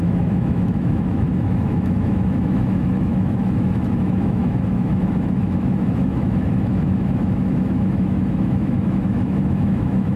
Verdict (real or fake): fake